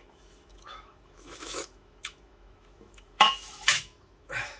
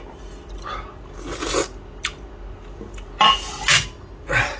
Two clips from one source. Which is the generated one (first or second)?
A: first